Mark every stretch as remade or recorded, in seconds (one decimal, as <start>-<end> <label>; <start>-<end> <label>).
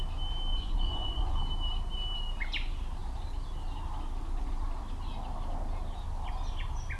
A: 0.0-0.5 recorded; 0.5-1.4 remade; 1.4-7.0 recorded